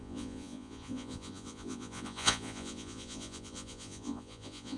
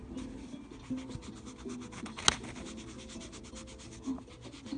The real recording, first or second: second